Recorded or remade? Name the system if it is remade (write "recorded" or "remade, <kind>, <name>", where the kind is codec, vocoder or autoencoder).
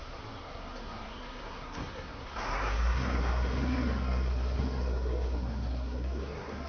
remade, codec, SNAC